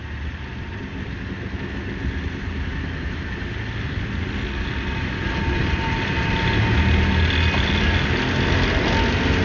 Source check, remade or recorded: recorded